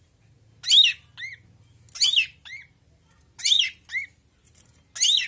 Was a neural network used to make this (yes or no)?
no